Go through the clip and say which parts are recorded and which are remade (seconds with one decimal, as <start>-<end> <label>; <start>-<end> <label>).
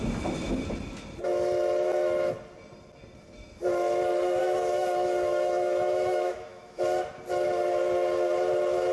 0.0-4.4 recorded; 4.4-6.8 remade; 6.8-8.9 recorded